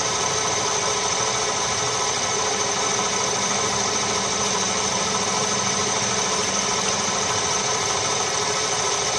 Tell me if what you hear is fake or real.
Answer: fake